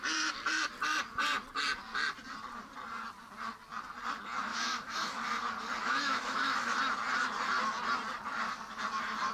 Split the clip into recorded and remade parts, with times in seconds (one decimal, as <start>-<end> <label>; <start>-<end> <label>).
0.0-4.5 recorded; 4.5-5.2 remade; 5.2-5.8 recorded; 5.8-6.8 remade; 6.8-9.3 recorded

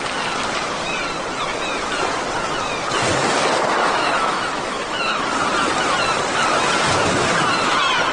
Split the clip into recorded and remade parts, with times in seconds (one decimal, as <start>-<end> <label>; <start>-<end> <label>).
0.0-3.8 recorded; 3.8-5.2 remade; 5.2-8.1 recorded